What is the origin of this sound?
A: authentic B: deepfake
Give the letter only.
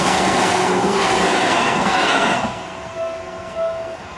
B